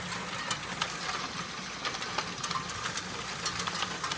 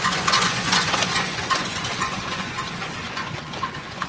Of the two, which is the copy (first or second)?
second